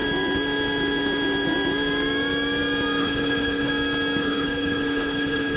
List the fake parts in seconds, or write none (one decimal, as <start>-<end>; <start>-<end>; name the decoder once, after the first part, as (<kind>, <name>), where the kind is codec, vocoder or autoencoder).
3.0-3.7 (codec, HILCodec); 4.2-5.6